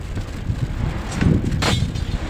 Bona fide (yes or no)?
yes